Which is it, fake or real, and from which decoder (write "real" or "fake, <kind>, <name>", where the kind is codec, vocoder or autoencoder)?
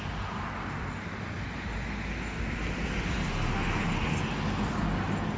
real